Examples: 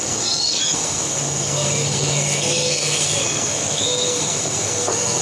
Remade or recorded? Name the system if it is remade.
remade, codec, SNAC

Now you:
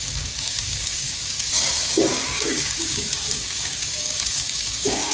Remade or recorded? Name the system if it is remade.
remade, codec, DAC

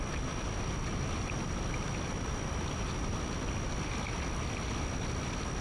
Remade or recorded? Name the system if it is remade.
recorded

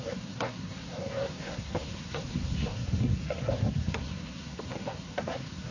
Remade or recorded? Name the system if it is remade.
remade, codec, SNAC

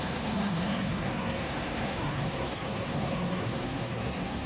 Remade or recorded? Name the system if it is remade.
remade, codec, SNAC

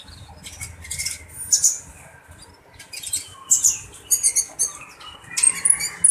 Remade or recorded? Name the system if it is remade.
recorded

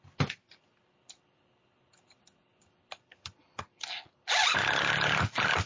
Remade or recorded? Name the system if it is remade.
recorded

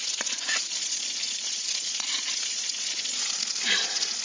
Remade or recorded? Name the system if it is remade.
remade, vocoder, Vocos